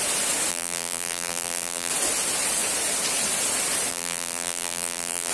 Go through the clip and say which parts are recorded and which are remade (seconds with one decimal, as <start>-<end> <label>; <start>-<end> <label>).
0.0-0.5 recorded; 0.5-1.9 remade; 1.9-3.9 recorded; 3.9-5.3 remade